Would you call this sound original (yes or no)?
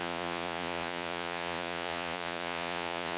no